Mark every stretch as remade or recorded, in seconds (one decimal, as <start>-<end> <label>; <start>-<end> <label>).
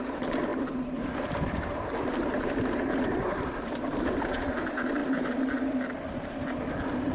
0.0-5.0 remade; 5.0-7.1 recorded